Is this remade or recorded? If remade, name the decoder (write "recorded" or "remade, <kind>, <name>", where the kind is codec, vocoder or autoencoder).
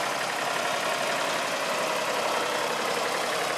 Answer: recorded